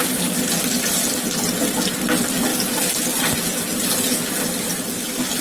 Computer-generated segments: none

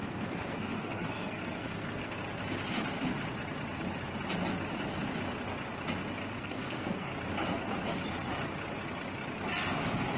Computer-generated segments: 0.0-2.2; 6.2-7.1